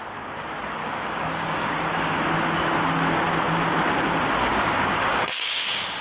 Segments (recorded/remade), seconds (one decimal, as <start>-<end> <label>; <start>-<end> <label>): 0.0-0.8 recorded; 0.8-1.7 remade; 1.7-4.5 recorded; 4.5-6.0 remade

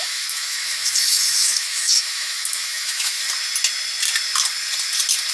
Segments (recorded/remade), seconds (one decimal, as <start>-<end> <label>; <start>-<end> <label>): 0.0-3.2 remade; 3.2-5.3 recorded

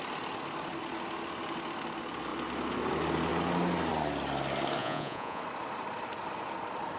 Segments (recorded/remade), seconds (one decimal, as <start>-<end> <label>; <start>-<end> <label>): 0.0-4.8 recorded; 4.8-5.4 remade; 5.4-7.0 recorded

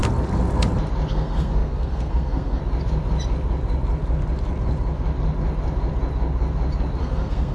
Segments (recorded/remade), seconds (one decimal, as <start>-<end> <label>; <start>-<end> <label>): 0.0-1.1 recorded; 1.1-2.6 remade; 2.6-7.0 recorded; 7.0-7.5 remade

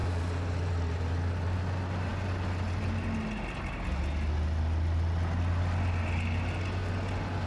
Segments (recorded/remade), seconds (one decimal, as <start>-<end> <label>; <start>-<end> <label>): 0.0-1.6 remade; 1.6-7.5 recorded